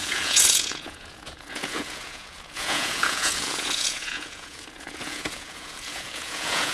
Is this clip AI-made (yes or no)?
yes